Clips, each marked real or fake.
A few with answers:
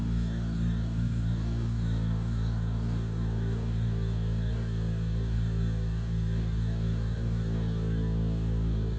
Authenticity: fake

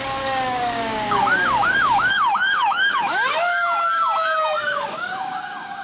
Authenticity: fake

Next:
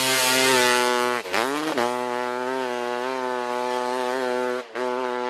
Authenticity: real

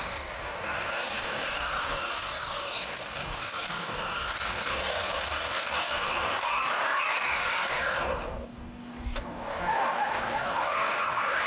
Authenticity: fake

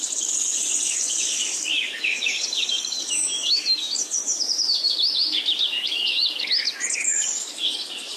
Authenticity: fake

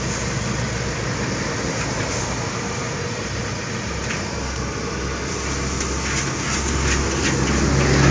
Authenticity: real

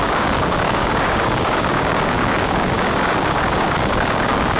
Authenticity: fake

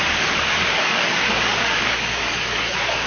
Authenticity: fake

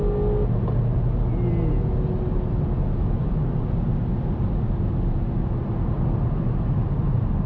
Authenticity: real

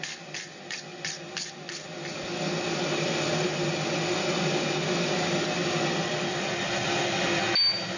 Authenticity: real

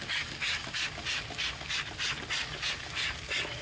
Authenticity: real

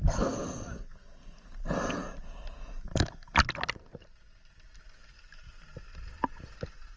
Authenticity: real